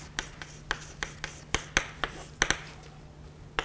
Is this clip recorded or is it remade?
recorded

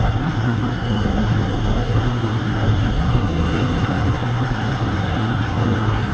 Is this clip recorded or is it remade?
remade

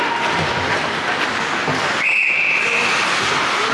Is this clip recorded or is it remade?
recorded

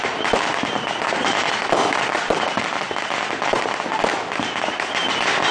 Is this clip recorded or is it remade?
recorded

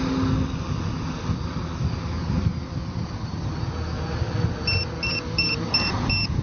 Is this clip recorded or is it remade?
recorded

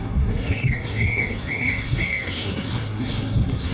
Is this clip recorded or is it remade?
remade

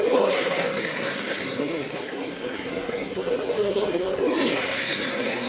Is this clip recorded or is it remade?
remade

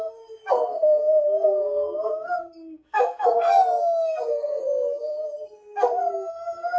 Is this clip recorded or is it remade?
remade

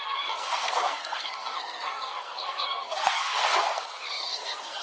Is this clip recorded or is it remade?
remade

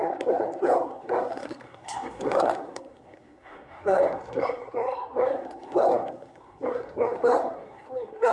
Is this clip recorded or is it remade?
remade